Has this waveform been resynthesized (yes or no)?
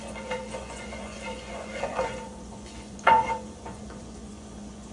yes